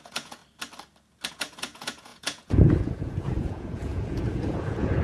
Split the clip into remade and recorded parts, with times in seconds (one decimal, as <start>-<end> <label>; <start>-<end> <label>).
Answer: 0.0-0.4 remade; 0.4-1.3 recorded; 1.3-5.0 remade